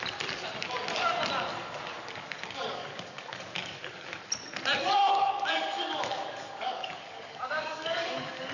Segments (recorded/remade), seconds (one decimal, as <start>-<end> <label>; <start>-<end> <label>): 0.0-1.5 recorded; 1.5-4.2 remade; 4.2-4.8 recorded; 4.8-8.5 remade